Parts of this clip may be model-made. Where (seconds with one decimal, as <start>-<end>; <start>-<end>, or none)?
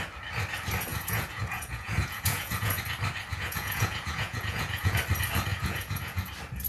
0.9-2.8; 3.3-5.0; 5.5-6.3